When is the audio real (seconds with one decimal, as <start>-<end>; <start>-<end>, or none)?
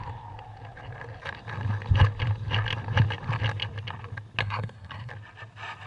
0.0-4.4; 5.1-5.9